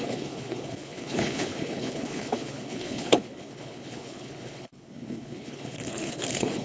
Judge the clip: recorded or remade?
remade